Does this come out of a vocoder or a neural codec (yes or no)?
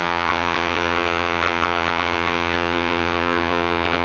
yes